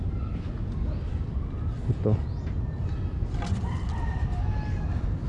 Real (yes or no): yes